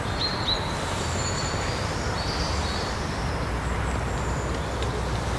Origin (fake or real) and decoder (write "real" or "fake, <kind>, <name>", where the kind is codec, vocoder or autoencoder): real